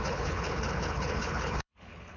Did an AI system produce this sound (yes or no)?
yes